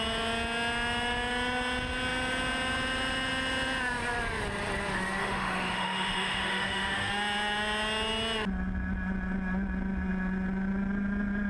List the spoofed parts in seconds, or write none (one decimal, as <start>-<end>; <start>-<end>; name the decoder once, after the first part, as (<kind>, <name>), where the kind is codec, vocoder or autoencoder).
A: 5.2-7.1 (autoencoder, DAC-VAE)

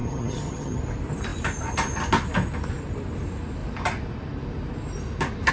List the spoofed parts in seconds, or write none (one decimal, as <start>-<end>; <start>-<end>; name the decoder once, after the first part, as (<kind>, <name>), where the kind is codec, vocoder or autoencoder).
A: 0.0-0.8 (vocoder, HiFi-GAN)

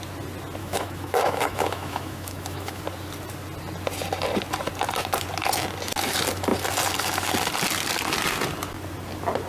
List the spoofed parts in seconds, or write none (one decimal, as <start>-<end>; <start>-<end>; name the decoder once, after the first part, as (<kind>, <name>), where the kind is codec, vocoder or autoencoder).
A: 0.6-2.8 (autoencoder, DAC-VAE)

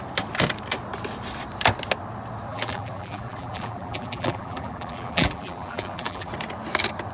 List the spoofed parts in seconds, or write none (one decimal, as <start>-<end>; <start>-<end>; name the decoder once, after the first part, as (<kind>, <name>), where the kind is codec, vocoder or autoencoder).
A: 2.5-6.3 (vocoder, BigVGAN v2)

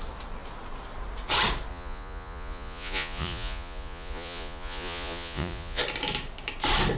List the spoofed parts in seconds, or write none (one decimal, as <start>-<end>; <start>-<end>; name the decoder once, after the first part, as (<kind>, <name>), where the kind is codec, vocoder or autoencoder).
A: 1.7-5.8 (vocoder, Vocos)

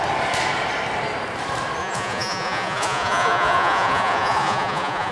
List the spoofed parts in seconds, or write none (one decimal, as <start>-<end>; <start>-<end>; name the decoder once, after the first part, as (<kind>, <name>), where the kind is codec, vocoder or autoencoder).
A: 1.8-5.1 (vocoder, Vocos)

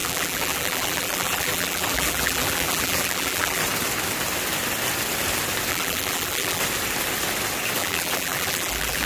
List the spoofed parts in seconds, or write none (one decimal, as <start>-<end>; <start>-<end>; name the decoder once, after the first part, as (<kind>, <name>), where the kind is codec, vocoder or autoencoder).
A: 0.0-3.6 (vocoder, BigVGAN v2); 5.7-6.6; 7.8-9.1

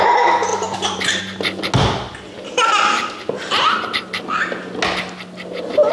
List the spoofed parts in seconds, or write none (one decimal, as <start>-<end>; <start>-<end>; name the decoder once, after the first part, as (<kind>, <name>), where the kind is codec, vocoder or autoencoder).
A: 0.5-1.2 (vocoder, BigVGAN v2)